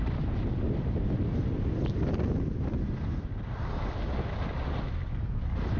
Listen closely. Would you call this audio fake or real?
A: real